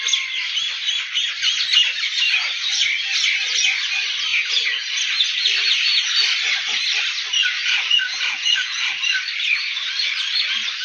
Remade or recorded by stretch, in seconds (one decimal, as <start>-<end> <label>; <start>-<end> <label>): 0.0-4.3 recorded; 4.3-4.9 remade; 4.9-7.4 recorded; 7.4-9.0 remade; 9.0-10.8 recorded